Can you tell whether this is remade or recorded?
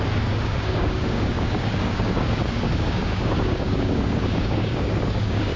remade